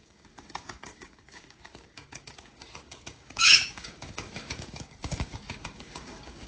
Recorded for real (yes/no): no